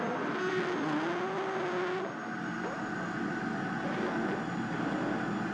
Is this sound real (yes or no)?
yes